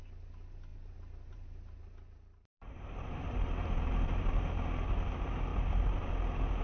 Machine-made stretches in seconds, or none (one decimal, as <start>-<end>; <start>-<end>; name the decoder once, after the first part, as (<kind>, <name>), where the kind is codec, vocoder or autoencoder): 0.7-4.2 (vocoder, BigVGAN v2); 5.5-6.1